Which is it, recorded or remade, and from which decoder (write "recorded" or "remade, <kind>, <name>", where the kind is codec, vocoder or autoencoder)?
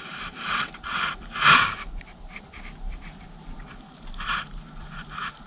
remade, vocoder, BigVGAN v2